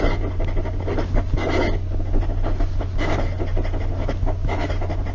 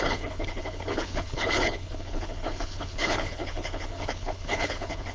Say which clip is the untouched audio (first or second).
first